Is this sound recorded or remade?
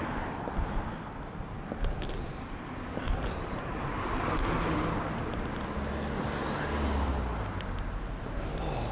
recorded